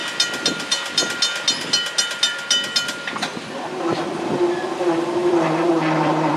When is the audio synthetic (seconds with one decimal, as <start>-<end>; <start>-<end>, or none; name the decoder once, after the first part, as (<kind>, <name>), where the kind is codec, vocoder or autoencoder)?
3.8-6.4 (vocoder, BigVGAN v2)